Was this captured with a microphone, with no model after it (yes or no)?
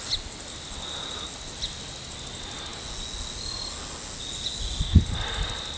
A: yes